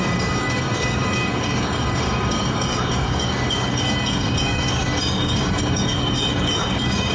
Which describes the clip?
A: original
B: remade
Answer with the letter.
B